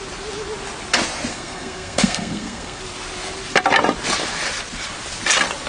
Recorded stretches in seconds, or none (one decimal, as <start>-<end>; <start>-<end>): 0.0-1.3; 2.8-5.7